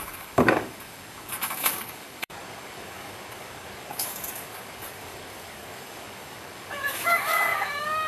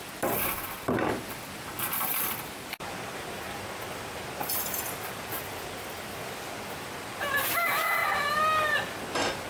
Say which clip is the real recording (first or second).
second